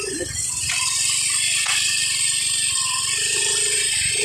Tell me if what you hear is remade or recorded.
remade